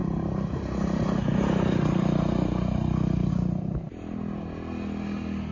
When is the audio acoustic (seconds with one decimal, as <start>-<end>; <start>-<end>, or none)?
0.0-5.5